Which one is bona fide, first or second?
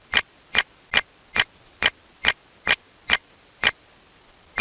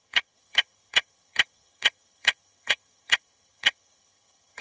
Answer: first